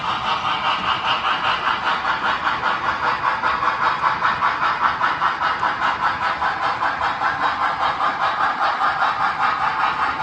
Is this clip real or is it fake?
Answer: real